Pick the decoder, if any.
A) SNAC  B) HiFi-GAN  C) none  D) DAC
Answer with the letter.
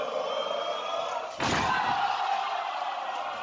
C